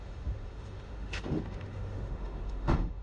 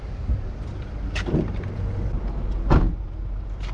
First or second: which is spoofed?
first